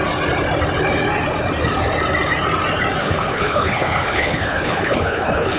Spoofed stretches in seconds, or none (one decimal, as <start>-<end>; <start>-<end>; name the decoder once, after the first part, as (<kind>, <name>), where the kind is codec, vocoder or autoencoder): 3.0-5.6 (codec, HILCodec)